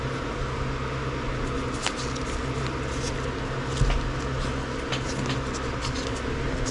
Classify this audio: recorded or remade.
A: recorded